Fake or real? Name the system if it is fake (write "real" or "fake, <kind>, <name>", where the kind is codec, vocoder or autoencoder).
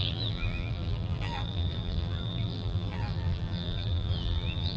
fake, vocoder, BigVGAN v2